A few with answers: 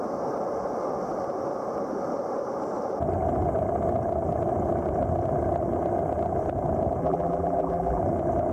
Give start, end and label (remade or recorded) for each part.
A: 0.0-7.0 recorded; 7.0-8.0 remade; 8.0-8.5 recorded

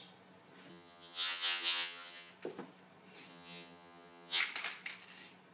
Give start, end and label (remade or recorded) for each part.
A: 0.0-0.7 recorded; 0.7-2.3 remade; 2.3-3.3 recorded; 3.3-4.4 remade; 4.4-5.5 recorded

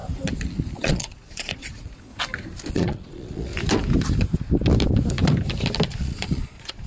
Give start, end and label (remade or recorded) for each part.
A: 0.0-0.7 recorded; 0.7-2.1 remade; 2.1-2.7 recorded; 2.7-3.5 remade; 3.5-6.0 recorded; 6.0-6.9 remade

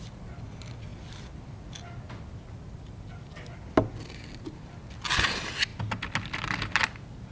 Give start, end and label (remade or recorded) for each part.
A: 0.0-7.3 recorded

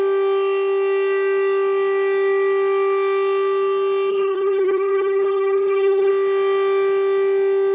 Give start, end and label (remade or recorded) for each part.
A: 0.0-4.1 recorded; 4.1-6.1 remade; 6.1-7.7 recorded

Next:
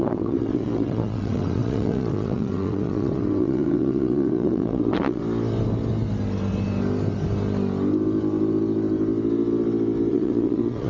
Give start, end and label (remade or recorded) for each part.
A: 0.0-5.2 remade; 5.2-10.1 recorded; 10.1-10.9 remade

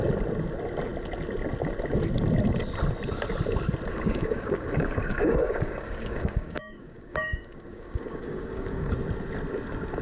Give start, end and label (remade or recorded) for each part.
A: 0.0-3.9 recorded; 3.9-8.9 remade; 8.9-10.0 recorded